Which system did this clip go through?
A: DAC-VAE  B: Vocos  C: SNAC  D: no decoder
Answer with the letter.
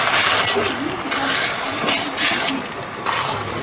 D